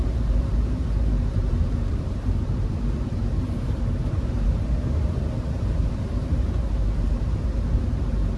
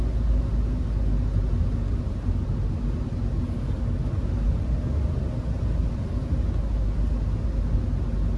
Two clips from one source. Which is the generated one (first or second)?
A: first